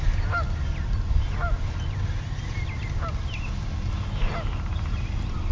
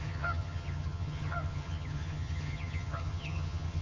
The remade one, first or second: second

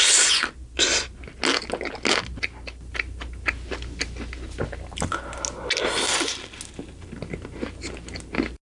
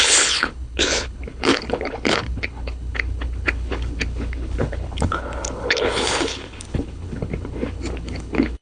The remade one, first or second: second